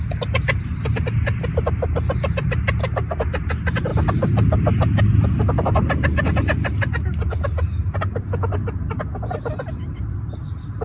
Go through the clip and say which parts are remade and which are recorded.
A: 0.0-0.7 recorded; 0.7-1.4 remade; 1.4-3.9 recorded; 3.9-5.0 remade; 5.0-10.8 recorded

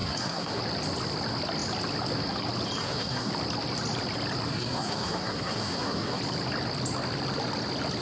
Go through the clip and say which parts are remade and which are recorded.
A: 0.0-0.6 remade; 0.6-2.8 recorded; 2.8-3.3 remade; 3.3-4.5 recorded; 4.5-6.2 remade; 6.2-8.0 recorded

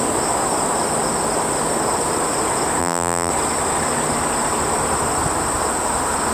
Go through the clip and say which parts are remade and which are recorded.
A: 0.0-2.8 recorded; 2.8-3.3 remade; 3.3-6.3 recorded

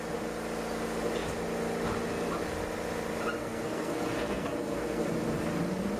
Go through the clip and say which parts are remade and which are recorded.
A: 0.0-3.4 recorded; 3.4-5.1 remade; 5.1-6.0 recorded

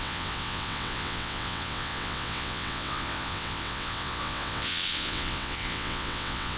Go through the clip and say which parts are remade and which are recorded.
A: 0.0-6.6 remade